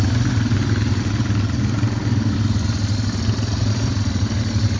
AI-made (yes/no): no